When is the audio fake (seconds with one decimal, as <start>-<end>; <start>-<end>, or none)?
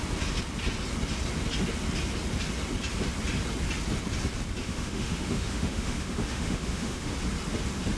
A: 4.6-7.1